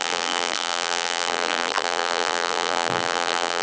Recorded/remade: remade